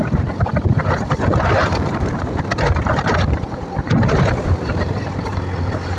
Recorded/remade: remade